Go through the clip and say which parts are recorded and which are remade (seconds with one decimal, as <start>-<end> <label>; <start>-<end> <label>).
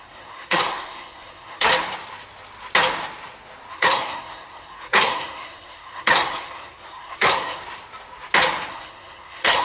0.0-1.7 remade; 1.7-3.7 recorded; 3.7-7.6 remade; 7.6-8.7 recorded; 8.7-9.6 remade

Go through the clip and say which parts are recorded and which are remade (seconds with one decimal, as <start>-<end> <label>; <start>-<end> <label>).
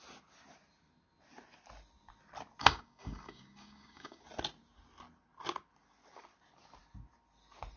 0.0-2.6 recorded; 2.6-4.2 remade; 4.2-7.8 recorded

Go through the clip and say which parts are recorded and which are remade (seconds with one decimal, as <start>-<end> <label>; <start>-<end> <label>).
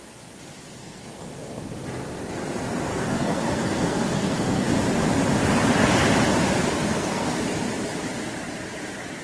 0.0-0.8 recorded; 0.8-1.7 remade; 1.7-2.9 recorded; 2.9-4.7 remade; 4.7-6.9 recorded; 6.9-7.4 remade; 7.4-9.2 recorded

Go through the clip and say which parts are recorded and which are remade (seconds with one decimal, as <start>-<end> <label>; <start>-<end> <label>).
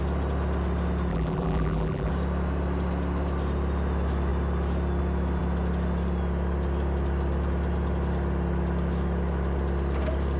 0.0-1.1 recorded; 1.1-2.1 remade; 2.1-10.4 recorded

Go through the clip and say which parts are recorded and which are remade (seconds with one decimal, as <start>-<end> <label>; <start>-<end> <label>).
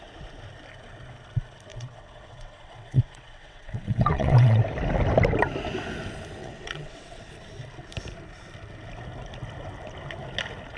0.0-1.7 recorded; 1.7-4.6 remade; 4.6-6.4 recorded; 6.4-7.3 remade; 7.3-10.8 recorded